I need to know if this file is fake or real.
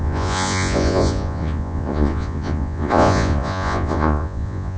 fake